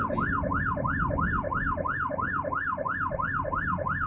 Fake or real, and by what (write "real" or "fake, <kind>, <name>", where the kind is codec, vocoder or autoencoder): real